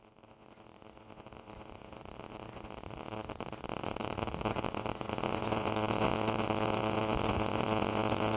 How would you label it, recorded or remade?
remade